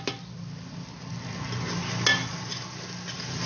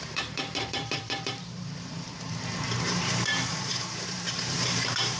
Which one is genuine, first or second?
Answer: first